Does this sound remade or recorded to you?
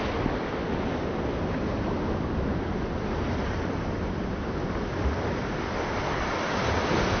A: recorded